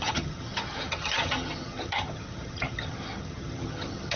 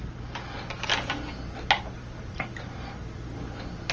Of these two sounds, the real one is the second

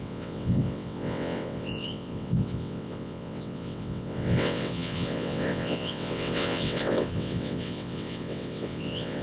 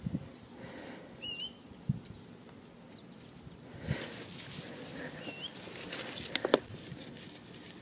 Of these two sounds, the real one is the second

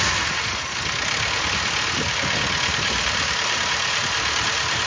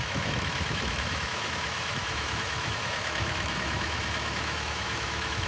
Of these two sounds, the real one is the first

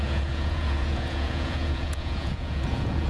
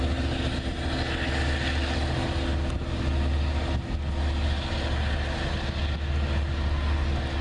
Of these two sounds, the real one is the second